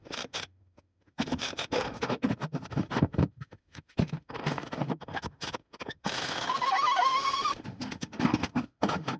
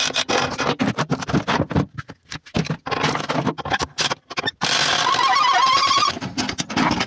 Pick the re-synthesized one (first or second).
first